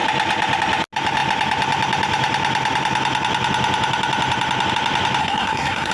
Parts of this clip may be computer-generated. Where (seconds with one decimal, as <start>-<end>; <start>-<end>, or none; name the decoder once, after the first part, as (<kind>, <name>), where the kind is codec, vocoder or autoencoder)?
5.2-5.9 (codec, SNAC)